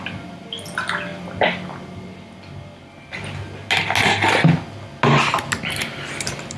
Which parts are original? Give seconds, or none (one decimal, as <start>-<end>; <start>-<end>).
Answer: 0.0-6.6